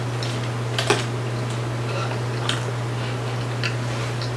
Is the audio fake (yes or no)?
no